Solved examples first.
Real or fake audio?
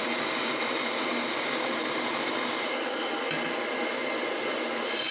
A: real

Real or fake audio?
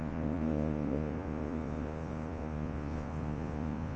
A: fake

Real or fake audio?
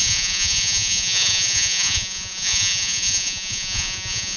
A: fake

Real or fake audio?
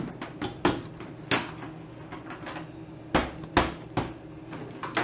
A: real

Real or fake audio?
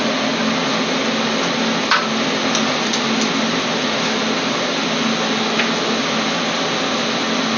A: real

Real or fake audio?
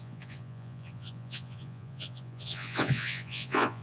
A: fake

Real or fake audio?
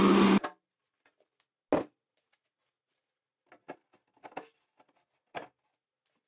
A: real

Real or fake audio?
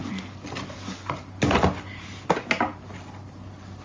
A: real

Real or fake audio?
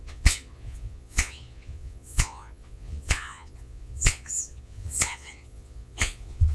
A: fake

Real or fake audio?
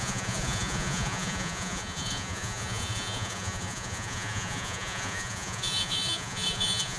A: fake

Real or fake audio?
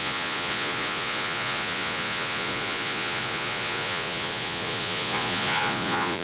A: fake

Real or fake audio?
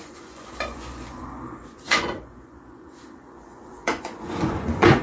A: fake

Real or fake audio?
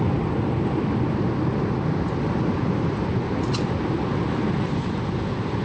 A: real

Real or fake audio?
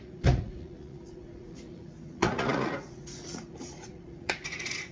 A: fake